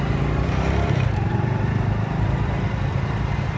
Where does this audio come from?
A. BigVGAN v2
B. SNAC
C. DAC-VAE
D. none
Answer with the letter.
A